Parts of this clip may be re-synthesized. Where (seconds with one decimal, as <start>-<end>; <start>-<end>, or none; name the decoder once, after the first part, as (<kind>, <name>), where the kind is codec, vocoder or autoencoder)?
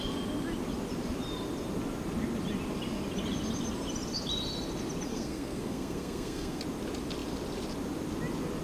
5.1-6.6 (codec, SNAC)